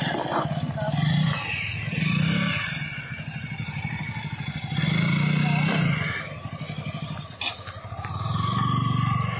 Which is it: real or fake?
real